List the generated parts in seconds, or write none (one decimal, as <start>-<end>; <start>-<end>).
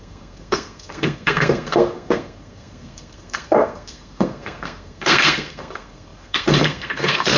0.0-7.4